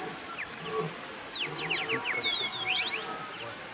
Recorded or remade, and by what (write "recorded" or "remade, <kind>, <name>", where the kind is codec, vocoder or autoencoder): recorded